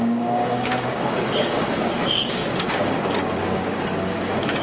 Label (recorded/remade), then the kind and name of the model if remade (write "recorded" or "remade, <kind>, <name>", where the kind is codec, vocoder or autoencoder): remade, codec, DAC